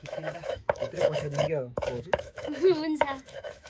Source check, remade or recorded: remade